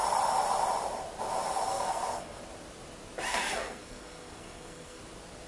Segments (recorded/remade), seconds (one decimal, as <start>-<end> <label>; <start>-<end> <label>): 0.0-1.7 recorded; 1.7-2.4 remade; 2.4-3.3 recorded; 3.3-5.0 remade; 5.0-5.5 recorded